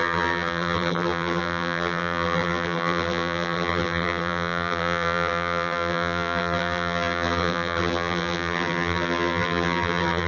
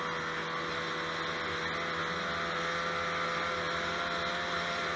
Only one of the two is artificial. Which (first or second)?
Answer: first